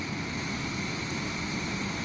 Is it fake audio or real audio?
real